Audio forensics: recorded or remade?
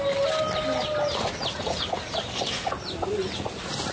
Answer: recorded